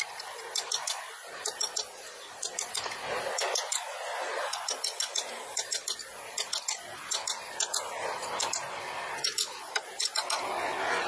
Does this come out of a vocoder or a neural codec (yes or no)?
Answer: no